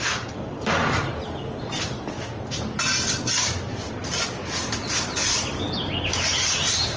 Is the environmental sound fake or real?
real